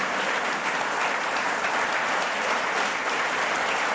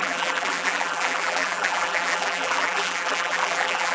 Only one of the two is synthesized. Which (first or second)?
second